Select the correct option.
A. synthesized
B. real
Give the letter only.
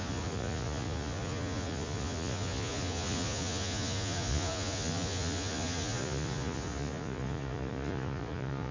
A